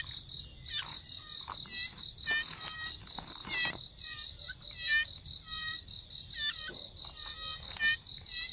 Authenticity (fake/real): real